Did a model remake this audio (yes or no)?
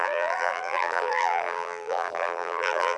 yes